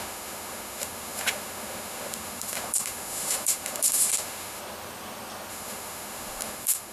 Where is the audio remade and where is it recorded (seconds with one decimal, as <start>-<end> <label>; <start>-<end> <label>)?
0.0-4.6 remade; 4.6-5.5 recorded; 5.5-6.9 remade